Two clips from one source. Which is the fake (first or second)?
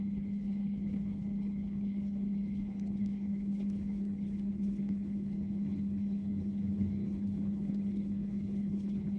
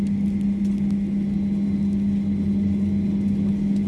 first